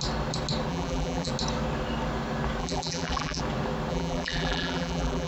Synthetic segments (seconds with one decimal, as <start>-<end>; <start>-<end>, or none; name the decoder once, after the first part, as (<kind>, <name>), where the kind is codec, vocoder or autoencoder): 0.7-1.3 (vocoder, BigVGAN v2); 2.6-3.4; 3.9-5.3

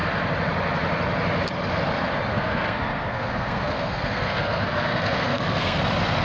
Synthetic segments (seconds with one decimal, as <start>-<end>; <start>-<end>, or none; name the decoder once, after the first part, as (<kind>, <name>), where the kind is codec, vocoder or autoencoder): 2.3-5.8 (codec, SNAC)

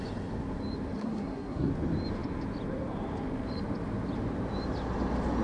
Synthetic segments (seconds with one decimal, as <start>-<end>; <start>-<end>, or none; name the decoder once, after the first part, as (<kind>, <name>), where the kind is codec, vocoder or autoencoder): 1.0-1.7 (codec, SNAC)

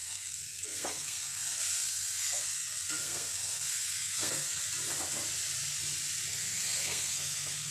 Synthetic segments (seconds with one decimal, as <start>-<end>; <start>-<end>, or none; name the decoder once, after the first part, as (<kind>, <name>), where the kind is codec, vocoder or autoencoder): 0.0-4.6 (codec, SNAC); 6.3-7.7

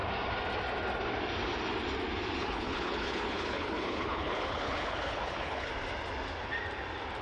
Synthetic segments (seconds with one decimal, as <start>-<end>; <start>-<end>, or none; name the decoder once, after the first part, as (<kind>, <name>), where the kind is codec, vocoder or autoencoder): 2.4-5.7 (codec, HILCodec)